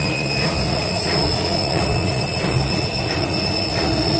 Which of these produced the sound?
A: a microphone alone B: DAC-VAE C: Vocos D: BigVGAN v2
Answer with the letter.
C